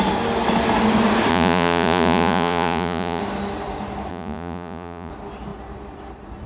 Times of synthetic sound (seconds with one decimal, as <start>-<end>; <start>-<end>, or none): 1.3-3.2; 4.1-5.1